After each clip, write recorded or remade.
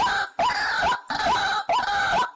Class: recorded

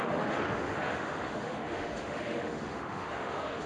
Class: remade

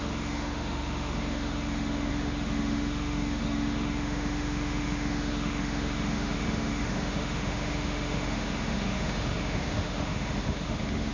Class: remade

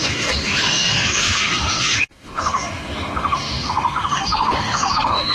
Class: remade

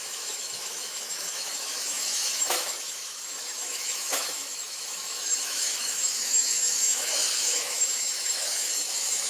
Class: remade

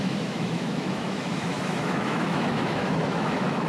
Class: remade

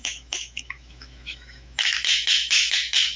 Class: remade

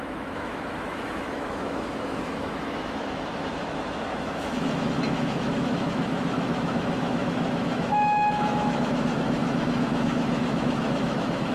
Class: remade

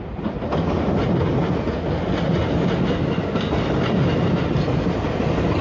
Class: recorded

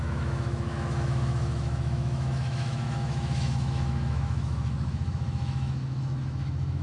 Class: remade